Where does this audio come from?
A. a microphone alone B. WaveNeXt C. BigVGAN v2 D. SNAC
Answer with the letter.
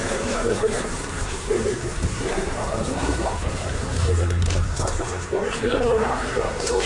D